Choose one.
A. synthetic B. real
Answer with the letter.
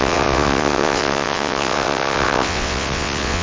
A